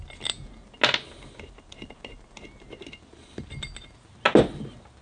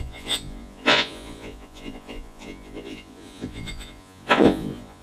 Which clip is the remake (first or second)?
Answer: second